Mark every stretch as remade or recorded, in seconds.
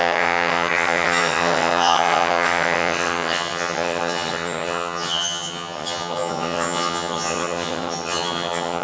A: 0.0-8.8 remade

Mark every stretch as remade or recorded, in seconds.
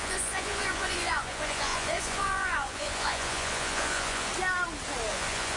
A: 0.0-4.3 remade; 4.3-5.1 recorded; 5.1-5.6 remade